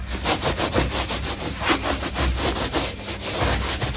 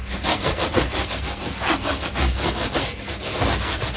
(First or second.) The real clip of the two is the first